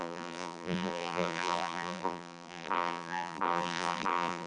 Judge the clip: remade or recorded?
remade